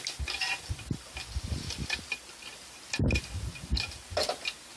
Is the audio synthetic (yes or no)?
no